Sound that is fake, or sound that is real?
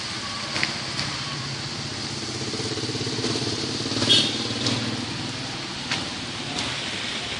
fake